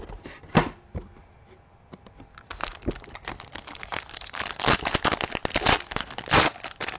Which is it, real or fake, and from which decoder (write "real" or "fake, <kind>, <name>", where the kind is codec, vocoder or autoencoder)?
real